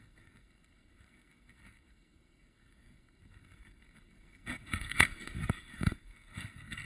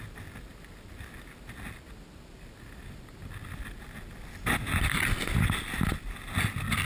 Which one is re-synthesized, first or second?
first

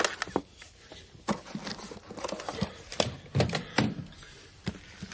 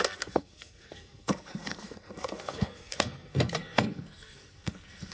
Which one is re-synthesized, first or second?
second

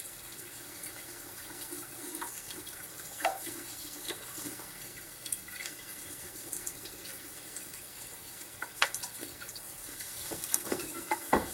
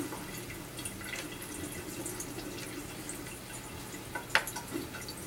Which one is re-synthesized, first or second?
first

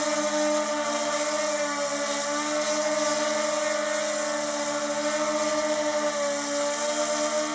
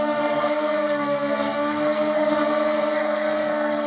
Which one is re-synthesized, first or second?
second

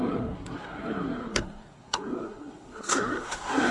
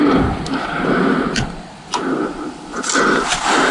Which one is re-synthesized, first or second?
first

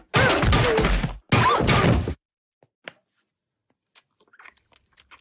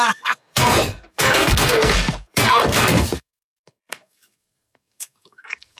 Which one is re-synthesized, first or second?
second